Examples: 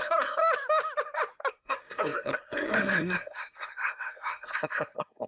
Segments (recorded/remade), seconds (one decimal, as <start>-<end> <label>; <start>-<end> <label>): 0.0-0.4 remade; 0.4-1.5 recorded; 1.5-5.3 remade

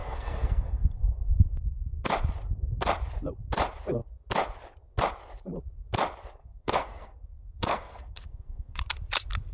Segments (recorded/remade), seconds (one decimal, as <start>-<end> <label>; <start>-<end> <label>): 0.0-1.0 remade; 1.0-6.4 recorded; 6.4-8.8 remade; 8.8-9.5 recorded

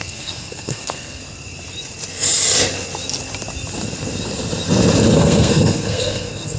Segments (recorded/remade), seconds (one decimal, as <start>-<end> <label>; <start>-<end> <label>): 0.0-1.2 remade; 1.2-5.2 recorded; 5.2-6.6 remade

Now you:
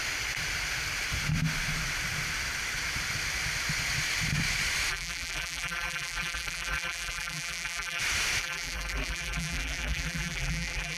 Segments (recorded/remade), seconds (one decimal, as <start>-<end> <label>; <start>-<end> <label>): 0.0-4.9 recorded; 4.9-8.0 remade; 8.0-8.4 recorded; 8.4-11.0 remade

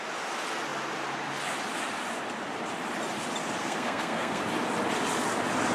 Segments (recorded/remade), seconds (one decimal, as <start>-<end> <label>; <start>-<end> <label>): 0.0-3.6 recorded; 3.6-4.4 remade; 4.4-5.7 recorded

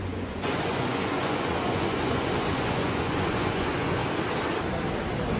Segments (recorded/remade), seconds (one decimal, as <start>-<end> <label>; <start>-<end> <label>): 0.0-4.0 remade; 4.0-5.4 recorded